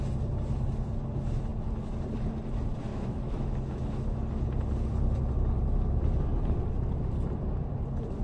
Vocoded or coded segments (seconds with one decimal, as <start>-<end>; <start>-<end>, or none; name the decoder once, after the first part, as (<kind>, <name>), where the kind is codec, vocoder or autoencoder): 2.9-4.2 (autoencoder, DAC-VAE)